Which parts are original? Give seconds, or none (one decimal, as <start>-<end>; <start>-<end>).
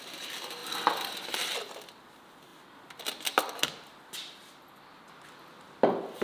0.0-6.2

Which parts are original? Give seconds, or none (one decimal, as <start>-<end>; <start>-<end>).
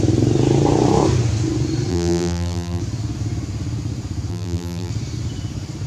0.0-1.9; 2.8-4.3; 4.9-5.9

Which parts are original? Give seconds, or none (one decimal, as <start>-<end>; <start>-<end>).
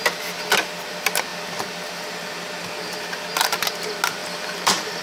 0.0-4.2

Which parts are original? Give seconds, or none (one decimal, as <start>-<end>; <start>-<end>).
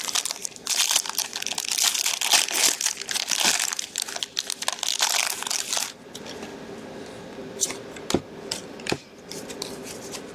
0.0-8.6; 9.5-10.3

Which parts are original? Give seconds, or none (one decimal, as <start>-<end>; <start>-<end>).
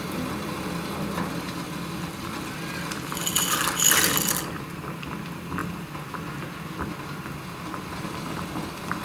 0.0-9.0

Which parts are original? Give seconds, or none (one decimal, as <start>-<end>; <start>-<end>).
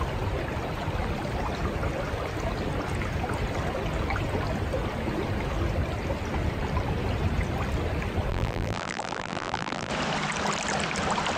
0.0-8.3; 9.9-11.4